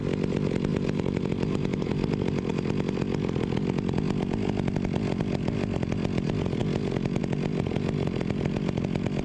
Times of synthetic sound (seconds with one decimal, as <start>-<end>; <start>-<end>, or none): 0.7-2.1